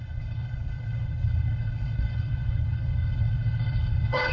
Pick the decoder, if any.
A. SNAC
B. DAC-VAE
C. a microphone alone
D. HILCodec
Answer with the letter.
D